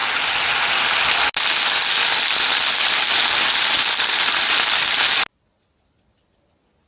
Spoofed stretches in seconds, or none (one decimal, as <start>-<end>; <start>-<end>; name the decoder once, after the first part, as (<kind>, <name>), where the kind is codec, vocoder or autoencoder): none